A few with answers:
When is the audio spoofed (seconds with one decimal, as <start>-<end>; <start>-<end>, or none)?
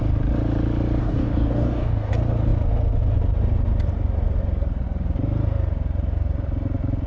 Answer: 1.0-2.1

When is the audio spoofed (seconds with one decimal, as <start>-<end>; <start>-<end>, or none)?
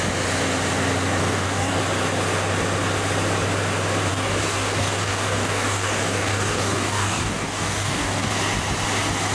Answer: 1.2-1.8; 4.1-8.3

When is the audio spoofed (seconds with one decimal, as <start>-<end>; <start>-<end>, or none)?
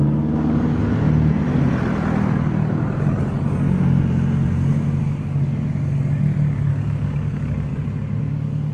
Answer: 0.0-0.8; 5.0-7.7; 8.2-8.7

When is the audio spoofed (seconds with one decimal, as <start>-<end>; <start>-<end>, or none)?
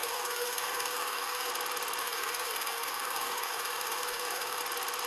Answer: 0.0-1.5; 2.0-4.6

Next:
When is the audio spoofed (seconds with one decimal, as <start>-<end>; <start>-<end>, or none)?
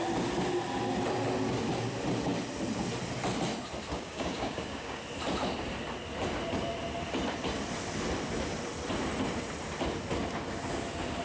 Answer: 3.9-5.0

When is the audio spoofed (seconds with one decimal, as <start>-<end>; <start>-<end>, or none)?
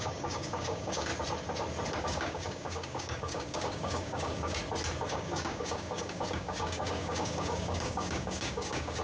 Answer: 0.0-1.1; 2.0-4.6; 5.1-9.0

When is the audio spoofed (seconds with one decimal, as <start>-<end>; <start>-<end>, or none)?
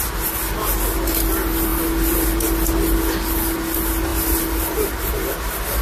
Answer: none